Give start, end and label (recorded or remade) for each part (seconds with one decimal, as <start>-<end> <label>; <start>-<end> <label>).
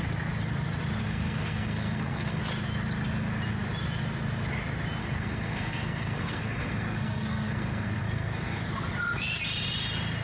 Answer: 0.0-1.0 recorded; 1.0-2.4 remade; 2.4-5.0 recorded; 5.0-8.6 remade; 8.6-10.2 recorded